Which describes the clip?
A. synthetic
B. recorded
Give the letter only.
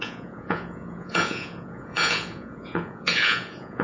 A